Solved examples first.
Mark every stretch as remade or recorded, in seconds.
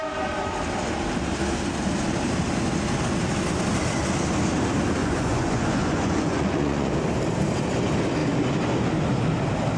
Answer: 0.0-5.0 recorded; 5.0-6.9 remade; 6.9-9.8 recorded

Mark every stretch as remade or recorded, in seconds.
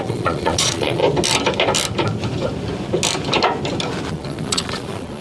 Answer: 0.0-1.0 remade; 1.0-4.1 recorded; 4.1-5.2 remade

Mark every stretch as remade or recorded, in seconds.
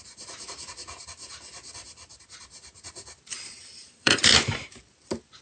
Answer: 0.0-3.3 recorded; 3.3-4.2 remade; 4.2-5.4 recorded